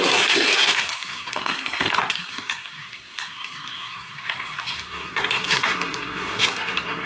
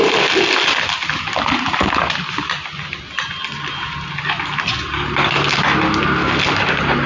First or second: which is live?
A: second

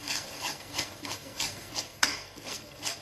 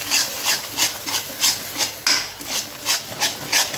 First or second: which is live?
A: second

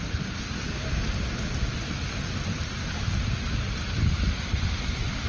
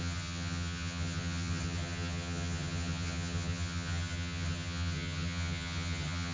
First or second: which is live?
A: first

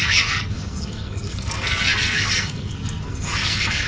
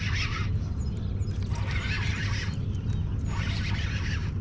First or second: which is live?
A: second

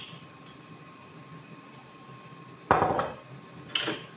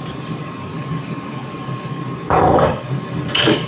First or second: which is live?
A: first